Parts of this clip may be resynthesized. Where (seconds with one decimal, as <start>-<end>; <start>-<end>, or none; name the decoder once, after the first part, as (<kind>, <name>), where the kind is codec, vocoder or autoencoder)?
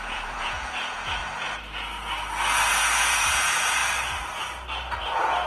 0.0-1.2 (vocoder, Vocos); 2.7-3.8